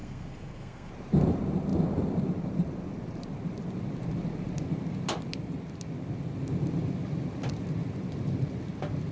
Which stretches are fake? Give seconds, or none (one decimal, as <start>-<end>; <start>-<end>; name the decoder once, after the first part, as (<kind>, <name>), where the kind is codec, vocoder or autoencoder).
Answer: 0.0-0.9 (codec, SNAC)